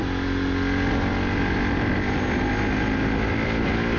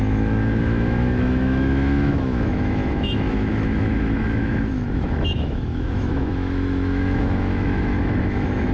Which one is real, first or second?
first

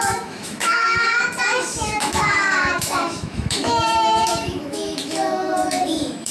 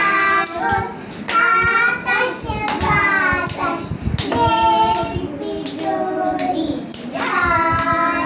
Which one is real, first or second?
second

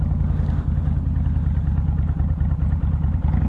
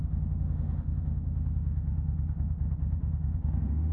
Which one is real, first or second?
first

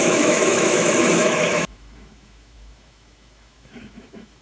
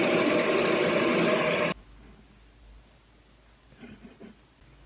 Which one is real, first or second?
second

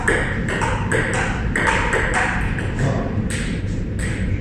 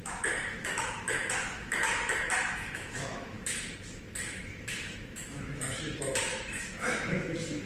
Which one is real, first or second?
first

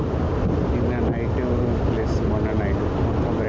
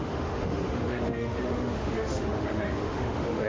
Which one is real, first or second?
first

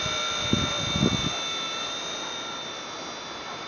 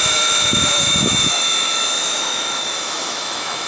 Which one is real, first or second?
first